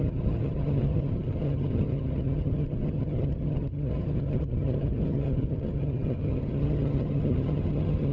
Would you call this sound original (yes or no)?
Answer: no